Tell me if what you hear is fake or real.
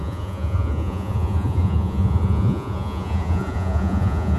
fake